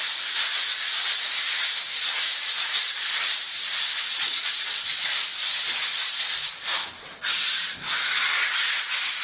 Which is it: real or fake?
real